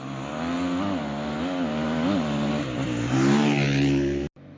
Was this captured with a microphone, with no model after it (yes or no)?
yes